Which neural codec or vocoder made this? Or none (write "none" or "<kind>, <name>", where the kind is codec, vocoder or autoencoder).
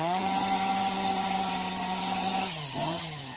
vocoder, HiFi-GAN